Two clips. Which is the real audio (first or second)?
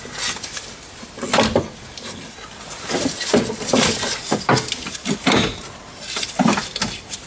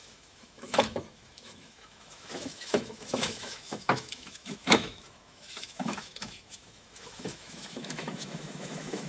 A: first